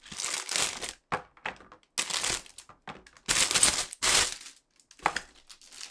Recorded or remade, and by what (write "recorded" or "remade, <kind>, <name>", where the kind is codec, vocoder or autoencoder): recorded